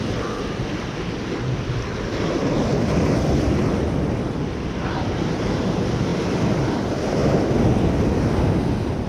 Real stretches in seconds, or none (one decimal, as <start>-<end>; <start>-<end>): 0.0-2.7; 3.4-9.1